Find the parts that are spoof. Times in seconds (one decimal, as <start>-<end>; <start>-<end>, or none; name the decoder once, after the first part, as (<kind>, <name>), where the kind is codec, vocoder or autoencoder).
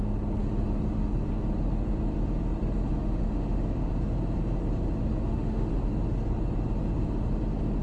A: 3.0-3.9 (autoencoder, DAC-VAE); 5.1-5.7